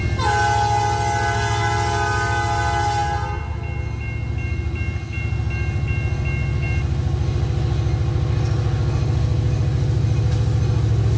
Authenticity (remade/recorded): recorded